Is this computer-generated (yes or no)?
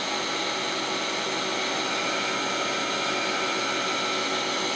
no